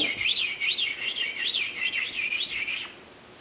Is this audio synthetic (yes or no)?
no